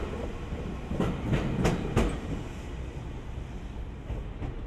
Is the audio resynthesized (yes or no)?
no